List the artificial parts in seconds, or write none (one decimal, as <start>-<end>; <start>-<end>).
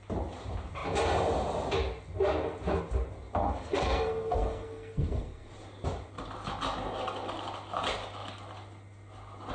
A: 3.4-5.5